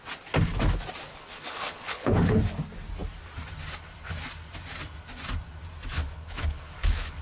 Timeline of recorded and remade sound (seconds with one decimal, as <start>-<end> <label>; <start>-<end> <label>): 0.0-1.1 recorded; 1.1-2.4 remade; 2.4-5.9 recorded; 5.9-7.2 remade